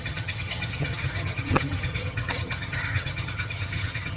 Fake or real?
fake